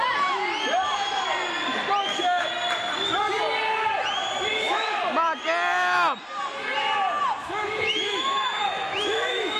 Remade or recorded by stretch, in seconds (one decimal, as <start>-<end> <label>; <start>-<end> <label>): 0.0-2.0 recorded; 2.0-2.5 remade; 2.5-4.5 recorded; 4.5-5.0 remade; 5.0-7.4 recorded; 7.4-9.6 remade